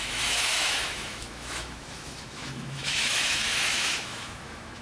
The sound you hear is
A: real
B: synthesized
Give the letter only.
B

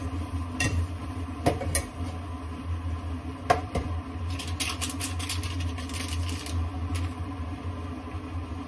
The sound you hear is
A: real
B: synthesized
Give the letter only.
A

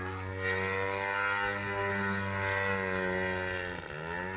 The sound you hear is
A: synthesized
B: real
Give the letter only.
B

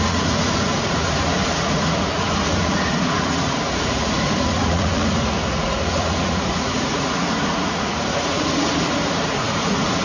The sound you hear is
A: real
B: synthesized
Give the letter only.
B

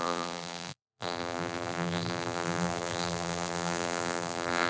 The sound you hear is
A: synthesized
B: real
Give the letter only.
A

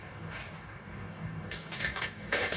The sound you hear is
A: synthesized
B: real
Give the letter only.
A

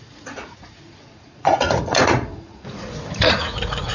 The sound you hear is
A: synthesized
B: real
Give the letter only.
A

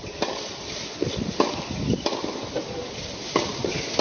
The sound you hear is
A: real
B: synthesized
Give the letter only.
B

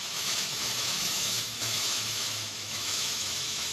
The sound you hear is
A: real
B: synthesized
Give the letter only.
B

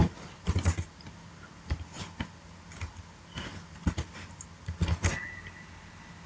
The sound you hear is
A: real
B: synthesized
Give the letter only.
A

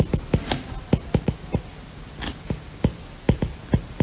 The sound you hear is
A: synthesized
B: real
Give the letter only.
B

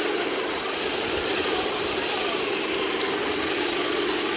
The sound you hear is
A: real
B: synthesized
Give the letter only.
A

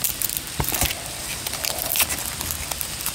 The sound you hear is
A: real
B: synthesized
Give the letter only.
B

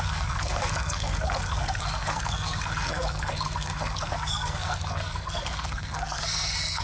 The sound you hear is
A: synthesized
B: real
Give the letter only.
A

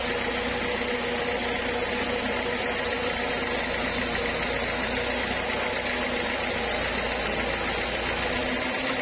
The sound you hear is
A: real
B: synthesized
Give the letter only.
A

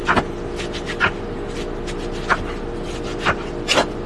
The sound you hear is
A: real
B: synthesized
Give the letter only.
A